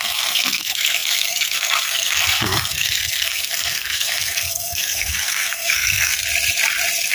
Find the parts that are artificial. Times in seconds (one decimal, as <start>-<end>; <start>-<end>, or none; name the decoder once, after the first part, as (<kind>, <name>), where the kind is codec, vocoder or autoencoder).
0.0-6.2 (codec, SNAC)